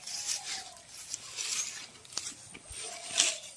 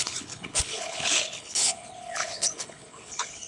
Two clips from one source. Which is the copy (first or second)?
second